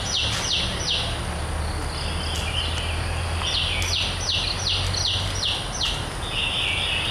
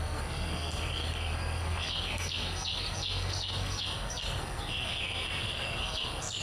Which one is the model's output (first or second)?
second